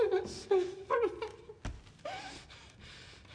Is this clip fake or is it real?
real